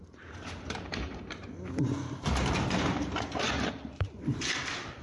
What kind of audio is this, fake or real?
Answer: fake